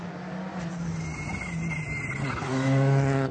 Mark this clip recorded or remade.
recorded